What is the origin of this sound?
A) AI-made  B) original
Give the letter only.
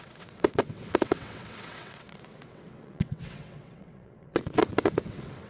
A